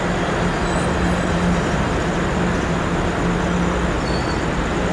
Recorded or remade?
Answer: recorded